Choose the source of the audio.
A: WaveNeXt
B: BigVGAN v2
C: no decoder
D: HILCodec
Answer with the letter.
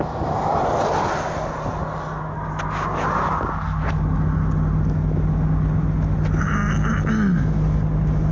C